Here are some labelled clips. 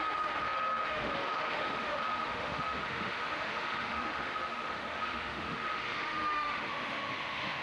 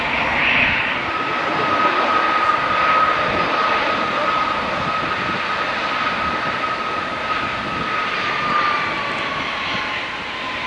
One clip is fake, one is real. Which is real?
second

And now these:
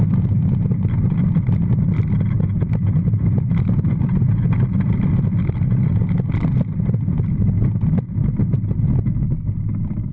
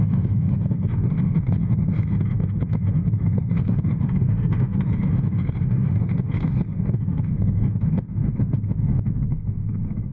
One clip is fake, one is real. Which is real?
first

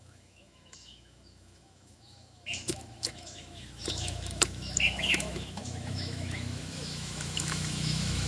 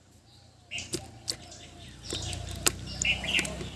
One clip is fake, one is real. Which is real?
second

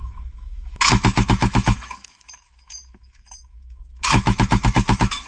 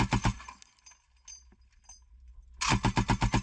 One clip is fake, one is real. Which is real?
second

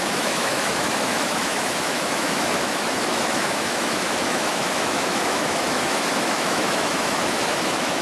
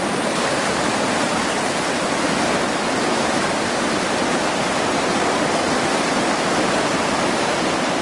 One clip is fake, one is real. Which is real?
second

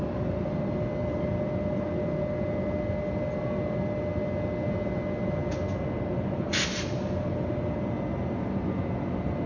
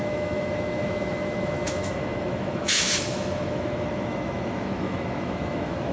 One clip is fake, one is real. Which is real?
first